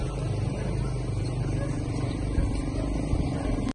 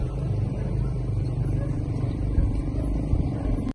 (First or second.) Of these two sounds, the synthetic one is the second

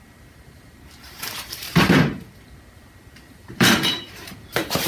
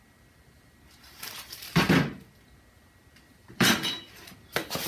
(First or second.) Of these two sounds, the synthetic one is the first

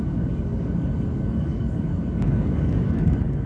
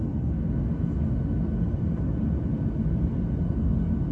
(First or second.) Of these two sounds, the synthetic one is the first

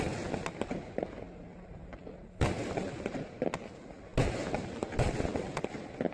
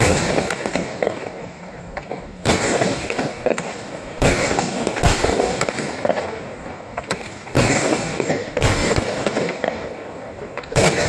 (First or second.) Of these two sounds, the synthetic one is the second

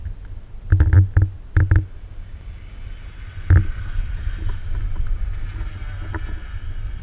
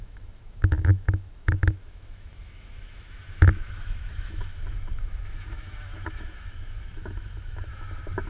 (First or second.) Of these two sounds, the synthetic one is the second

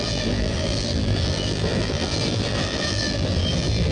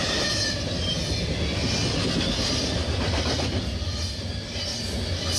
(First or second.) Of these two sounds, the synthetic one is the first